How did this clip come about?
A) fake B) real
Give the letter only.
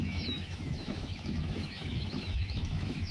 A